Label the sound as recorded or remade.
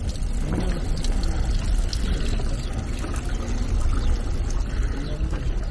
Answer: recorded